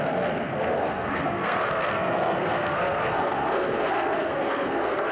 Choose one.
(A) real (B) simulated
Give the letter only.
B